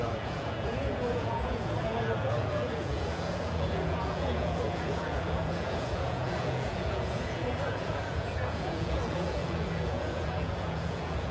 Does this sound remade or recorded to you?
remade